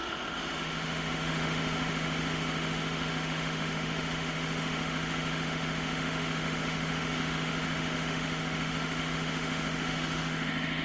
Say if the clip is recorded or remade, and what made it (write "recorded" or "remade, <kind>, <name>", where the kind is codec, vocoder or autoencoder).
remade, autoencoder, DAC-VAE